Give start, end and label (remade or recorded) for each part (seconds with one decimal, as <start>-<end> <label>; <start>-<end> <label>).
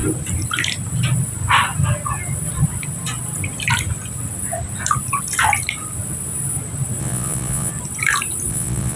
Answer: 0.0-7.0 recorded; 7.0-7.7 remade; 7.7-8.5 recorded; 8.5-9.0 remade